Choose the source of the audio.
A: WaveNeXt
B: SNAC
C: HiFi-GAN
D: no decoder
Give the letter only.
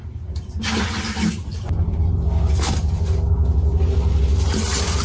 D